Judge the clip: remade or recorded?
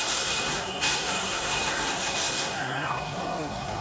remade